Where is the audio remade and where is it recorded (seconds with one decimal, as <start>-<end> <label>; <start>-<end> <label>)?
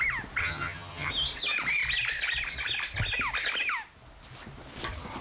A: 0.0-0.4 recorded; 0.4-1.1 remade; 1.1-5.2 recorded